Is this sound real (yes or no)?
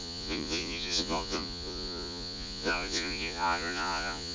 no